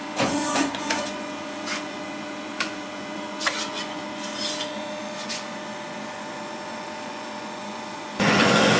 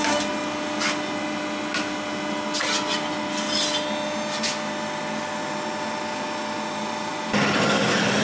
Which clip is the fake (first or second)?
first